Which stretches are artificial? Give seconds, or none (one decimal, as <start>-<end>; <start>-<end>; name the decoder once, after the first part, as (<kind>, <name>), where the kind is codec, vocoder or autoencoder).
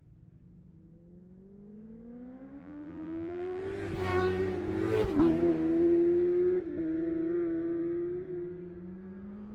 2.6-3.6 (vocoder, BigVGAN v2)